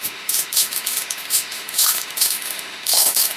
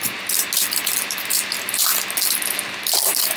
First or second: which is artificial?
first